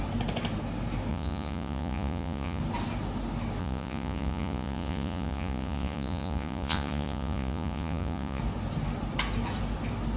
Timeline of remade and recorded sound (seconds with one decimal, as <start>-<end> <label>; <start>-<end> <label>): 0.0-1.1 recorded; 1.1-2.6 remade; 2.6-3.6 recorded; 3.6-8.4 remade; 8.4-10.2 recorded